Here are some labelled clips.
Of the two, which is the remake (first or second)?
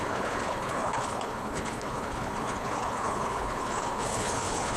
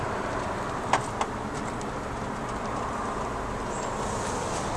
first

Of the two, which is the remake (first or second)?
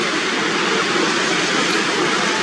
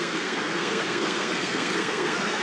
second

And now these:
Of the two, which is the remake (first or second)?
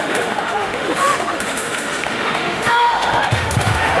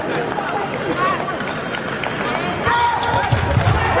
first